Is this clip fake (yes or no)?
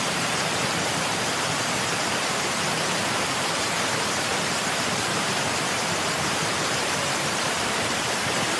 yes